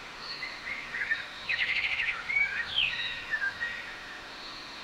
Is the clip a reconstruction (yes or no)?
yes